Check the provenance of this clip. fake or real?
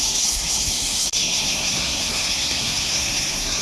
fake